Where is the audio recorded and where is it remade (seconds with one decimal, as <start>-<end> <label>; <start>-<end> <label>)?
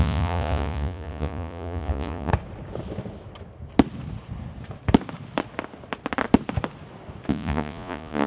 0.0-2.3 remade; 2.3-7.3 recorded; 7.3-8.3 remade